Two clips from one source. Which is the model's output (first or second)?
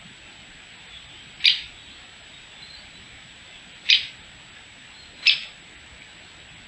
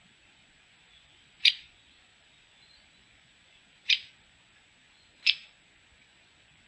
second